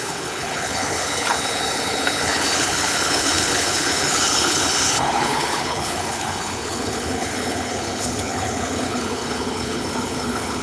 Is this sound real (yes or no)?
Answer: no